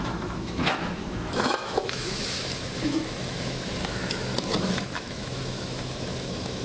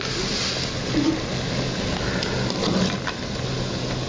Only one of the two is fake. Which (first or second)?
first